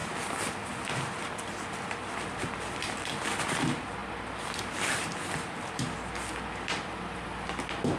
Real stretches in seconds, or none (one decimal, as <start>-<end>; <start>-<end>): 3.1-4.0